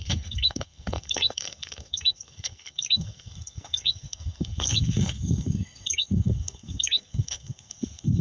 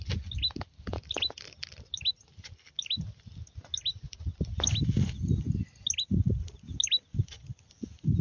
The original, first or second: second